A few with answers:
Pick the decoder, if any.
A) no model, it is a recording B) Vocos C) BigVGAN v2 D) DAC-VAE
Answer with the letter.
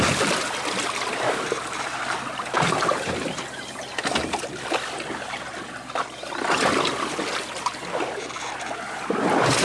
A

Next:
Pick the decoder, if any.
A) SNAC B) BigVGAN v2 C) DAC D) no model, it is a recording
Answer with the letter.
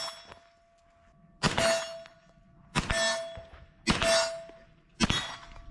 D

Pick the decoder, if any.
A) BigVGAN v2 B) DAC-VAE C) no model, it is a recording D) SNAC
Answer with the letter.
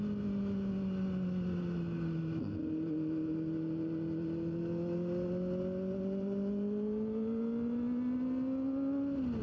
C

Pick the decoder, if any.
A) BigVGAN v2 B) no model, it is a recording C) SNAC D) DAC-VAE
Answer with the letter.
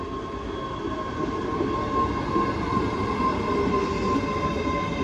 B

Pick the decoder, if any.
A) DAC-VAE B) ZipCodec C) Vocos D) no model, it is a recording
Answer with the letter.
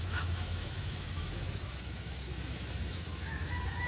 A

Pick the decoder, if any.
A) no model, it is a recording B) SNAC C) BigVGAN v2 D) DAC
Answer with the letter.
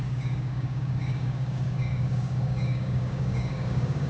D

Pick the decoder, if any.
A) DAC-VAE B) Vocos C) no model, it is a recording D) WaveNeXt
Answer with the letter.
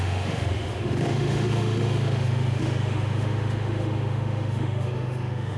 A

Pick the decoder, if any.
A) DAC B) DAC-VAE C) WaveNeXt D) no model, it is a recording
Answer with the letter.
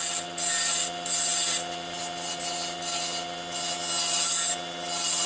D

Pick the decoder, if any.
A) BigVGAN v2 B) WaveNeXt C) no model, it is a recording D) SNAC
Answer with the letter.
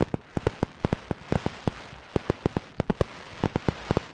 C